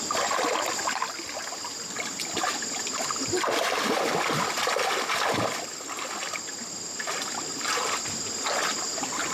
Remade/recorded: recorded